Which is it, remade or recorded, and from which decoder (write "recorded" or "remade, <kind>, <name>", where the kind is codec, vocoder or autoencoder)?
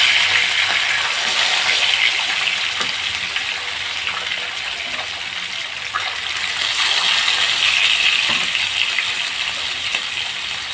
recorded